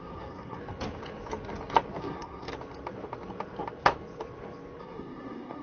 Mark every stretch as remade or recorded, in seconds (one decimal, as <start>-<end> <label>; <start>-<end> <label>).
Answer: 0.0-0.6 remade; 0.6-2.0 recorded; 2.0-2.5 remade; 2.5-4.8 recorded; 4.8-5.6 remade